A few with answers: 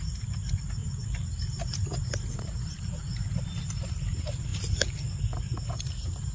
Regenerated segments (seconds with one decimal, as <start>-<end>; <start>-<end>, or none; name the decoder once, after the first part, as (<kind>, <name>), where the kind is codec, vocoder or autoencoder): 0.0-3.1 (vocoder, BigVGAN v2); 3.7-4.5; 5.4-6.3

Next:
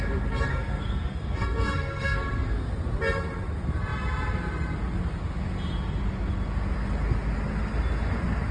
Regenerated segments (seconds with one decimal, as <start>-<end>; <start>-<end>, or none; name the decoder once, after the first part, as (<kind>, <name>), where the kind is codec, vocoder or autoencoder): 0.5-2.7 (codec, SNAC)

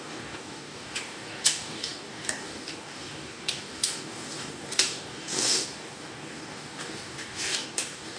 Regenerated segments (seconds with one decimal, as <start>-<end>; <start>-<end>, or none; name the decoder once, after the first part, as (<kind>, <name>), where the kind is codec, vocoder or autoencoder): 0.0-8.2 (codec, DAC)

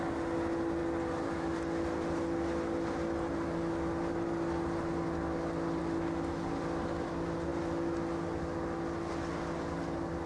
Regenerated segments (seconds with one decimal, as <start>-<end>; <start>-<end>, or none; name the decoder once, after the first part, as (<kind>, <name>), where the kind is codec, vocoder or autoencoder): none

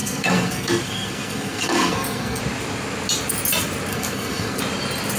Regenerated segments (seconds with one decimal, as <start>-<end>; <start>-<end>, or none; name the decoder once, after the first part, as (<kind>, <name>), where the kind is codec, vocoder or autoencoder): 0.0-2.4 (codec, SNAC); 3.9-4.6